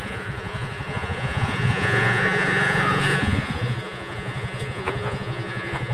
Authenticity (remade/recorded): remade